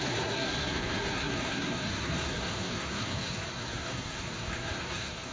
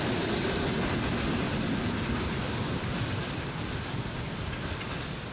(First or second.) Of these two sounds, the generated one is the first